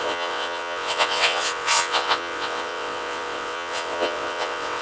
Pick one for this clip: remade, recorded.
remade